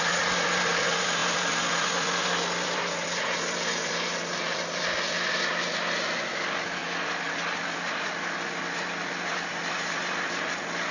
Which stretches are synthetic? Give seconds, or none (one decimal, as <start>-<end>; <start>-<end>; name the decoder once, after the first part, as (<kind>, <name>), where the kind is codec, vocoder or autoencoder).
none